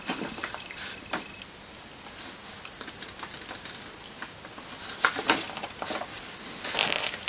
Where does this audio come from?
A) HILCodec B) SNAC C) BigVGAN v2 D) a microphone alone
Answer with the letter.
D